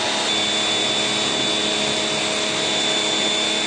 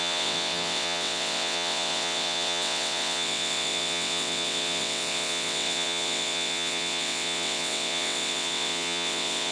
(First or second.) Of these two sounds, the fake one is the second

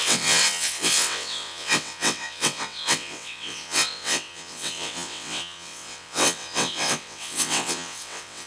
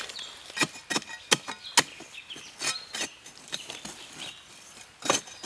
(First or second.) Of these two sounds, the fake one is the first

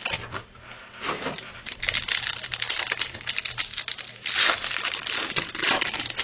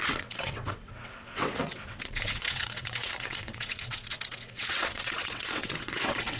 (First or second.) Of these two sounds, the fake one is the second